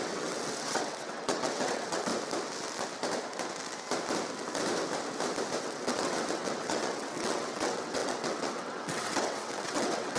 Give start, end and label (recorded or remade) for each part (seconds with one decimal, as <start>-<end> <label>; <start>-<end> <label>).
0.0-2.1 remade; 2.1-5.6 recorded; 5.6-10.2 remade